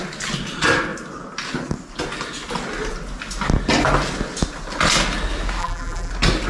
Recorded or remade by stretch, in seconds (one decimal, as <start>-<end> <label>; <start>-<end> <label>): 0.0-5.6 recorded; 5.6-6.1 remade; 6.1-6.5 recorded